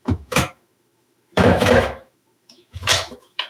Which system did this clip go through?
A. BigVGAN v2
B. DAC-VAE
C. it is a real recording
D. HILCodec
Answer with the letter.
B